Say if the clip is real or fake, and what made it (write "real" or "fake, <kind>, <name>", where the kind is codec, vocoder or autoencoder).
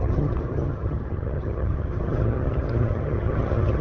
fake, vocoder, HiFi-GAN